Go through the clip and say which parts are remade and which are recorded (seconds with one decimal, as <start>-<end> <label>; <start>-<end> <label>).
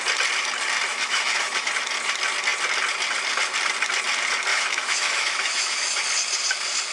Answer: 0.0-0.9 recorded; 0.9-1.7 remade; 1.7-4.5 recorded; 4.5-6.0 remade; 6.0-6.9 recorded